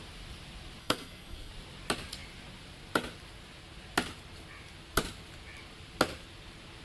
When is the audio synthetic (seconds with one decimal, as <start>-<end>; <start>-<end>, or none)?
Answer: 0.8-1.5

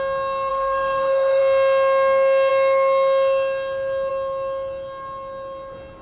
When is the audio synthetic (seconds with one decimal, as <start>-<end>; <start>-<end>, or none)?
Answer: 0.5-1.4